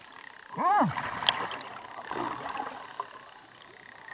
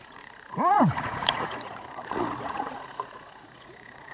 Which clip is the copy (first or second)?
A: second